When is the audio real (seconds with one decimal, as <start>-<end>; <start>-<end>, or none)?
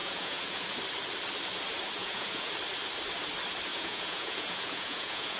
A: 0.6-2.0; 2.5-3.7